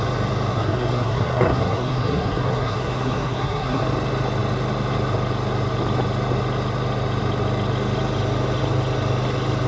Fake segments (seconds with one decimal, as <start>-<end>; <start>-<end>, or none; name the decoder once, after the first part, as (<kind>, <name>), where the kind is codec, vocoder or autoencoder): 0.5-3.8 (codec, SNAC)